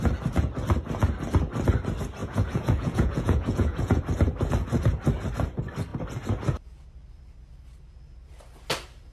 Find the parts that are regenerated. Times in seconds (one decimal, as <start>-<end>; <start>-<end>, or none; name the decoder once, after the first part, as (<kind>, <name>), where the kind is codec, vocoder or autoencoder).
2.2-4.0 (vocoder, Vocos)